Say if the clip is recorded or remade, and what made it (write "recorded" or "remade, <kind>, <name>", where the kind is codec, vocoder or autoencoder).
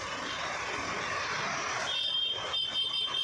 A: remade, vocoder, BigVGAN v2